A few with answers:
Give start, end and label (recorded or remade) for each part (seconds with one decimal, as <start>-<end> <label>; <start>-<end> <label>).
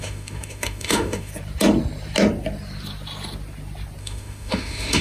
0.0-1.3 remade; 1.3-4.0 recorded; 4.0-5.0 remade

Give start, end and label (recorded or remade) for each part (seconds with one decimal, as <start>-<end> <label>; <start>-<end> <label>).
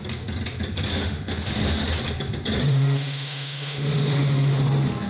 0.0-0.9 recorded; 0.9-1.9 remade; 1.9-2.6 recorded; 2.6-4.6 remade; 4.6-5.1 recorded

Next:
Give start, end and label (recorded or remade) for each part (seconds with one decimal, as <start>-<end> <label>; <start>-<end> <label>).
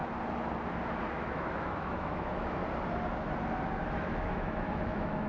0.0-1.1 recorded; 1.1-2.6 remade; 2.6-3.9 recorded; 3.9-5.3 remade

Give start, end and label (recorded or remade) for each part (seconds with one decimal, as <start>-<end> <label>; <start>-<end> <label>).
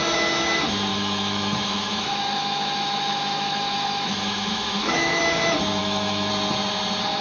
0.0-0.9 recorded; 0.9-5.2 remade; 5.2-5.8 recorded; 5.8-6.3 remade; 6.3-7.2 recorded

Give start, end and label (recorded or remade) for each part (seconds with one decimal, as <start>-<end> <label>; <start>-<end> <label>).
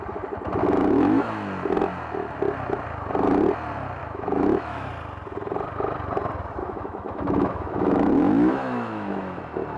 0.0-0.6 recorded; 0.6-1.3 remade; 1.3-4.0 recorded; 4.0-4.9 remade; 4.9-6.6 recorded; 6.6-9.4 remade; 9.4-9.8 recorded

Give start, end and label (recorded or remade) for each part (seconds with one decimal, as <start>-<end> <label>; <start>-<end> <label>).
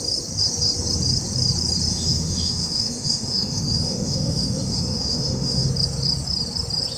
0.0-1.9 recorded; 1.9-5.7 remade; 5.7-7.0 recorded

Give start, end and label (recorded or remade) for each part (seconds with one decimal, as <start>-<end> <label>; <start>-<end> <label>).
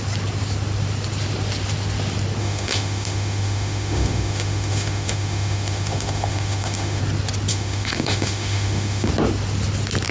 0.0-2.4 recorded; 2.4-7.0 remade; 7.0-7.5 recorded; 7.5-9.1 remade; 9.1-10.1 recorded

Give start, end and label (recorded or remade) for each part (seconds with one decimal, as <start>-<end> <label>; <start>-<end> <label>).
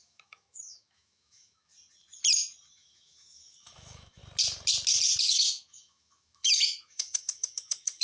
0.0-1.7 remade; 1.7-2.7 recorded; 2.7-4.2 remade; 4.2-5.2 recorded; 5.2-8.0 remade